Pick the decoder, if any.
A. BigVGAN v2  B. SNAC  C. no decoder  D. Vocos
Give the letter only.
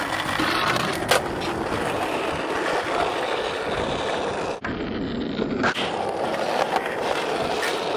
C